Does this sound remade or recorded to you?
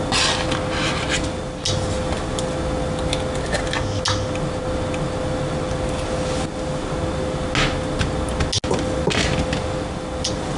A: recorded